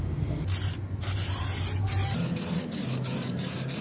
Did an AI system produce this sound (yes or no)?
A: no